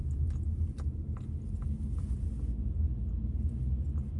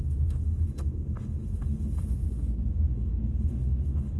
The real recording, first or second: first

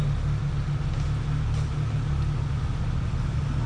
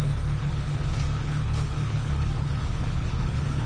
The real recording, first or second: first